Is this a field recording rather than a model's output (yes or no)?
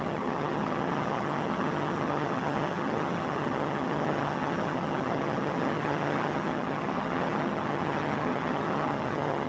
no